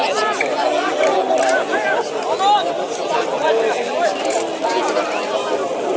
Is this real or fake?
real